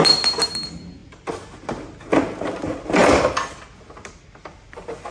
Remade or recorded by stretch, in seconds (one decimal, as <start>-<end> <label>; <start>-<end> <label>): 0.0-5.1 recorded